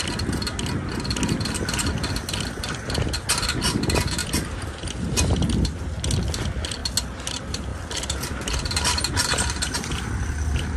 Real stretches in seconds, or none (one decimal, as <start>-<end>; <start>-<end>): 0.0-4.2; 5.8-7.7; 9.1-10.8